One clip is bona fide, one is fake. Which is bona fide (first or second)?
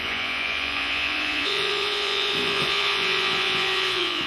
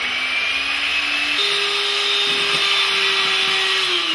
second